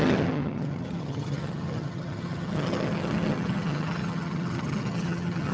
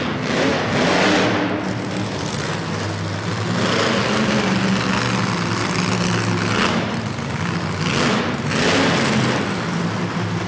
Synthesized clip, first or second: first